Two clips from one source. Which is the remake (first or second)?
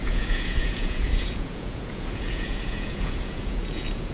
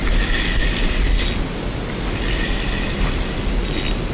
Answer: first